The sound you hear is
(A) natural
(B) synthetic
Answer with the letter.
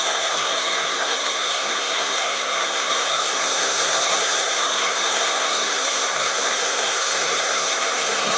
B